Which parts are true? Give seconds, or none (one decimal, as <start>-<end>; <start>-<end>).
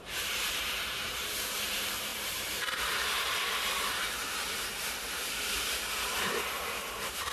none